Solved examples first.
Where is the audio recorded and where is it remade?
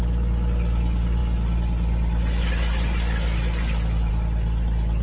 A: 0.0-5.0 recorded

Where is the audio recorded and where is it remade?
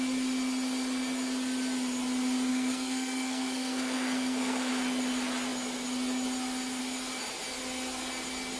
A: 0.0-2.5 recorded; 2.5-4.7 remade; 4.7-8.6 recorded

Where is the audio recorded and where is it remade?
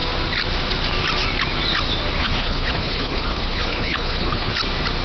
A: 0.0-2.2 recorded; 2.2-4.5 remade; 4.5-5.0 recorded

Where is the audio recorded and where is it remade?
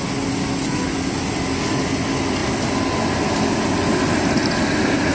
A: 0.0-5.1 recorded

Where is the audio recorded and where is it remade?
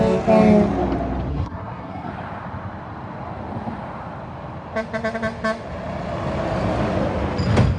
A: 0.0-1.3 recorded; 1.3-2.1 remade; 2.1-7.8 recorded